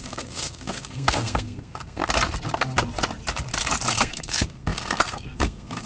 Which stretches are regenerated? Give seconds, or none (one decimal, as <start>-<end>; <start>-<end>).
0.0-2.0; 3.9-5.9